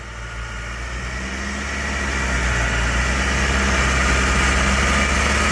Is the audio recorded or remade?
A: recorded